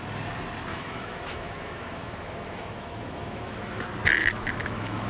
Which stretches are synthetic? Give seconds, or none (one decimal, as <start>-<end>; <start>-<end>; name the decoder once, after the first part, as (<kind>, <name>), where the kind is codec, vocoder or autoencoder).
0.7-3.8 (autoencoder, DAC-VAE); 4.2-5.1

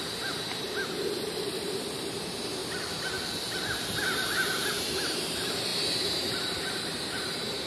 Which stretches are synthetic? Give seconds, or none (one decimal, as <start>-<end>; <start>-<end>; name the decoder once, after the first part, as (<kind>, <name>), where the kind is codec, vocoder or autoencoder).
0.0-2.6 (vocoder, BigVGAN v2); 4.7-7.7

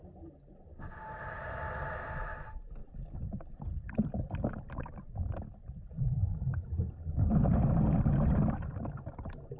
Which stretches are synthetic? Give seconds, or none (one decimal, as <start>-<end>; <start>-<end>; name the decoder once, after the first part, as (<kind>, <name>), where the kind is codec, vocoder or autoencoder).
2.8-7.7 (vocoder, BigVGAN v2)

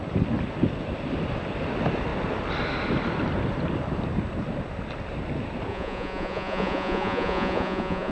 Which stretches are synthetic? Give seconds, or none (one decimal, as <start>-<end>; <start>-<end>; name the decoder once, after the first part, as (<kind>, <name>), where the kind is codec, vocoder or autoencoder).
5.7-8.1 (vocoder, Vocos)

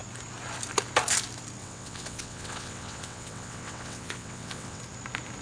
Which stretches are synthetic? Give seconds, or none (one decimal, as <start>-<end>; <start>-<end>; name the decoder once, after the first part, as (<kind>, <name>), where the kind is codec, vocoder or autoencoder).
1.6-4.8 (vocoder, WaveNeXt)